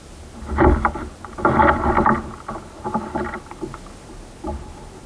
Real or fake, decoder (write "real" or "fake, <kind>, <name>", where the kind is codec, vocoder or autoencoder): real